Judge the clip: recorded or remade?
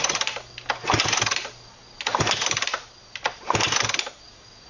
recorded